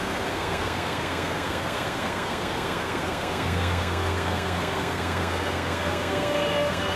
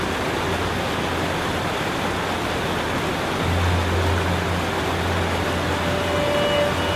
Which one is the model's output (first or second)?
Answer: first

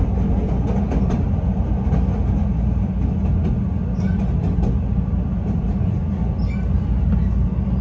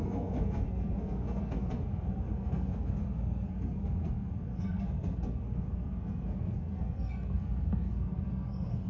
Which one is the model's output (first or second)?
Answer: second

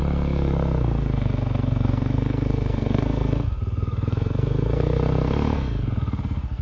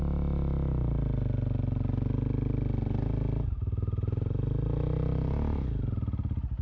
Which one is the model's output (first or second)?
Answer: first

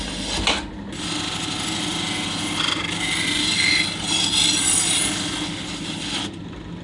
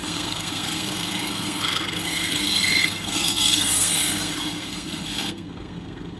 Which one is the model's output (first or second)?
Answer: second